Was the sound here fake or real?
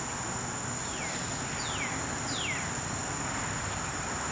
real